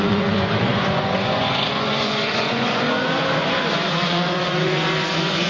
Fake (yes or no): yes